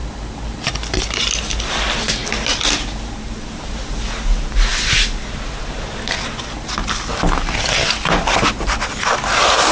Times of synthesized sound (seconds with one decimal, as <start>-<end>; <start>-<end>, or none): none